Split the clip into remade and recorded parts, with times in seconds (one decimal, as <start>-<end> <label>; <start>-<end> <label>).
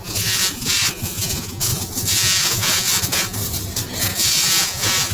0.0-3.4 remade; 3.4-4.0 recorded; 4.0-5.1 remade